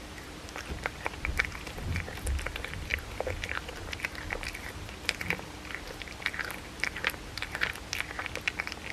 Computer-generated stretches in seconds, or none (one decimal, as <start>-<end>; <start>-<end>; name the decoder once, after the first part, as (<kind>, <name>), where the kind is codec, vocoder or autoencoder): none